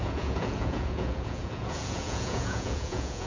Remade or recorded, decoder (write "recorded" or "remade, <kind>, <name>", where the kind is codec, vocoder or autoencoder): remade, vocoder, Vocos